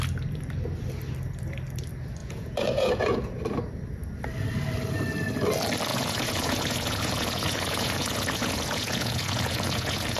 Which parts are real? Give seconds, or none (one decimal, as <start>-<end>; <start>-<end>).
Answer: 0.0-2.2; 3.4-5.9